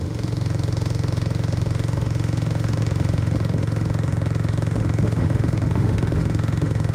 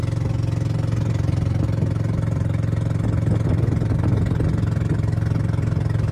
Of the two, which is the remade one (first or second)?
first